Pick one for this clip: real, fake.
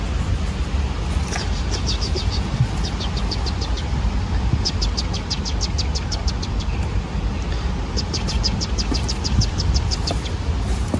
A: real